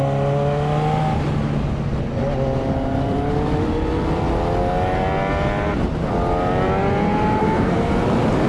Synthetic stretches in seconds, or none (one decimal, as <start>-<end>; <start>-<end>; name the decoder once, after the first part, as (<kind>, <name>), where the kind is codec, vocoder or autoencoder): 7.4-7.9 (codec, SNAC)